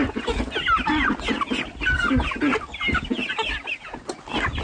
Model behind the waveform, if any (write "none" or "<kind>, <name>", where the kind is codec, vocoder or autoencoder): none